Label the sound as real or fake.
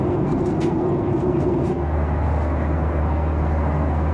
fake